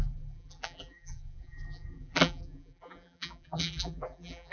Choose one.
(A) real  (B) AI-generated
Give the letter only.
B